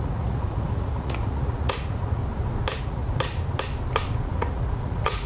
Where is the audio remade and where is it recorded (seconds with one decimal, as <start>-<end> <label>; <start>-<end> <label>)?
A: 0.0-2.2 remade; 2.2-2.8 recorded; 2.8-3.3 remade; 3.3-4.2 recorded; 4.2-5.3 remade

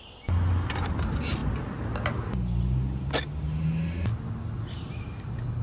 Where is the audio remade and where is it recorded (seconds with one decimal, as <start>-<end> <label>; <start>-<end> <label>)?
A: 0.0-5.6 recorded

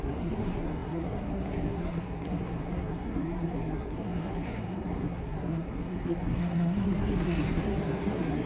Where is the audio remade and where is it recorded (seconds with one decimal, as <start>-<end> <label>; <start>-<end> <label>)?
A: 0.0-8.5 remade

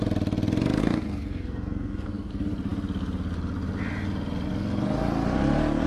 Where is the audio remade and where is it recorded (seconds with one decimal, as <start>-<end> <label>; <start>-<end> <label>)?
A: 0.0-0.8 recorded; 0.8-2.3 remade; 2.3-5.9 recorded

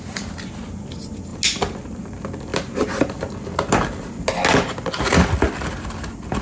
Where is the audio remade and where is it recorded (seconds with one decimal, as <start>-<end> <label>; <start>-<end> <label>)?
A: 0.0-6.4 recorded

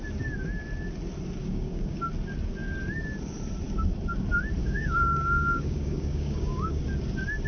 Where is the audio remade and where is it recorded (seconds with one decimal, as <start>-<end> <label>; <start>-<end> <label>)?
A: 0.0-1.4 recorded; 1.4-2.0 remade; 2.0-4.6 recorded; 4.6-6.8 remade; 6.8-7.5 recorded

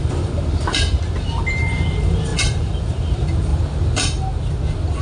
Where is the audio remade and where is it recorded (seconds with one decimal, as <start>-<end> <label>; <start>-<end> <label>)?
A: 0.0-3.5 remade; 3.5-5.0 recorded